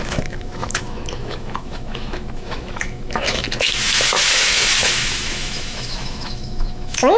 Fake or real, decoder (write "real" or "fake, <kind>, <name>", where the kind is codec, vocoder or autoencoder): fake, autoencoder, DAC-VAE